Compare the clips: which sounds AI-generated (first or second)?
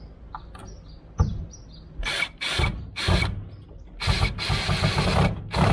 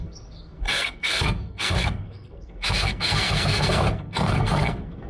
second